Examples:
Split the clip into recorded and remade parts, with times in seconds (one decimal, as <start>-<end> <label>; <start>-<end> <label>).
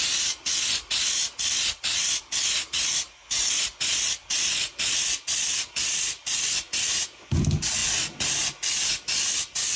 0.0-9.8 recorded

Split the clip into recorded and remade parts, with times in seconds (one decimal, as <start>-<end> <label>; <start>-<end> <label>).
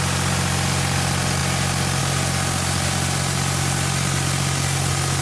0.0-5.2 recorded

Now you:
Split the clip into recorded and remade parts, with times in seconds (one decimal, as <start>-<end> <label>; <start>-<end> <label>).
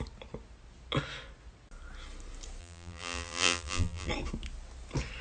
0.0-2.6 recorded; 2.6-4.1 remade; 4.1-5.2 recorded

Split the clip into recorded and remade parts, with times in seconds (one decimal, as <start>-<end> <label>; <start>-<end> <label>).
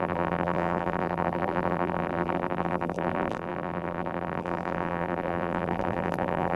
0.0-6.6 remade